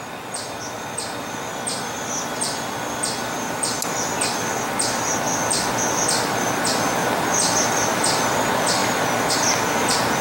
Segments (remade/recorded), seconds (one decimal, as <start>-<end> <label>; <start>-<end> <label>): 0.0-10.2 recorded